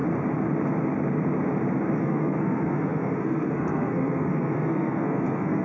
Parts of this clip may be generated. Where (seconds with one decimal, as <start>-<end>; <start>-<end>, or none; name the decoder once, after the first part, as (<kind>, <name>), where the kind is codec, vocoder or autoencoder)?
2.0-5.6 (codec, SNAC)